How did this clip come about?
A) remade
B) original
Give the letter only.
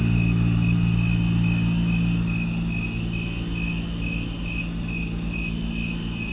B